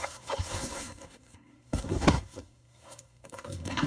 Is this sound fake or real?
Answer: fake